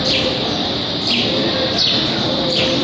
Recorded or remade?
recorded